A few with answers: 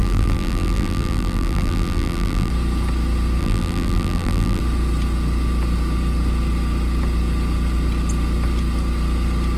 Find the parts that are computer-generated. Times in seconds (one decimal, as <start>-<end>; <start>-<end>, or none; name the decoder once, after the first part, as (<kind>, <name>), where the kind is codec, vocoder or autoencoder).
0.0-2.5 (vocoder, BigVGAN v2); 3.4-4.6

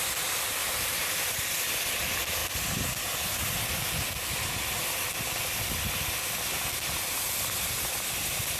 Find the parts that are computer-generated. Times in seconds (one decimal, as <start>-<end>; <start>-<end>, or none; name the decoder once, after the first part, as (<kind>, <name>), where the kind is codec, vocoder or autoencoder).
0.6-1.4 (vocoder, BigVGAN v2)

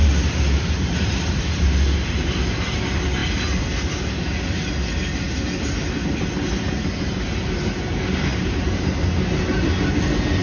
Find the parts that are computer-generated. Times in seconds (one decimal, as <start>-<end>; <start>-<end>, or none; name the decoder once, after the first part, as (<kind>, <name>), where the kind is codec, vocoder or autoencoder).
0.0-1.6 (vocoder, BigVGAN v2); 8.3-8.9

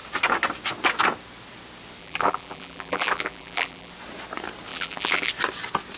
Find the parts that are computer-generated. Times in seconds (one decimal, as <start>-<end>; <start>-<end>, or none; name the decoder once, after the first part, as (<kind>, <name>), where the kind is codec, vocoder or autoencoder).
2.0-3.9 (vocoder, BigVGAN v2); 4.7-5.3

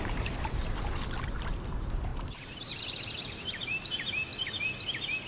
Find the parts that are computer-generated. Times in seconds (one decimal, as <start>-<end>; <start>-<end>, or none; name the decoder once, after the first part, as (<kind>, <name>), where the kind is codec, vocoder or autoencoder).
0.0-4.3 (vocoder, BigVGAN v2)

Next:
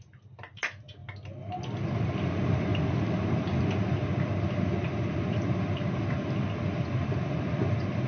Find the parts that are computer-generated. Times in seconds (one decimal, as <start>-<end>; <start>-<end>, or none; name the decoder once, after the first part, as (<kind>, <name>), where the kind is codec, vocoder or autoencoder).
none

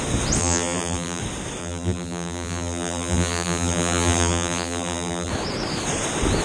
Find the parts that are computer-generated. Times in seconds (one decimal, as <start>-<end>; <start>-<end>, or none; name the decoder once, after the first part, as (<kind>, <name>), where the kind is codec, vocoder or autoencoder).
0.4-1.2 (vocoder, BigVGAN v2); 1.6-5.3